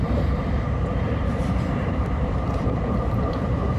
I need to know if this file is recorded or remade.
remade